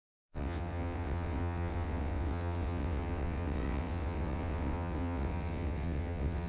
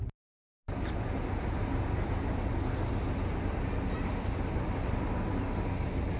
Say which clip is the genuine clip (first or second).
second